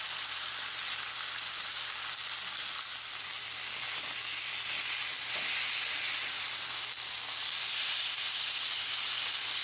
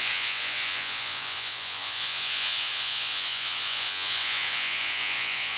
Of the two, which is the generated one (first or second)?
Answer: second